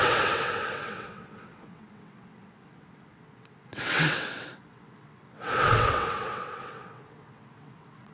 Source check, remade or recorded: remade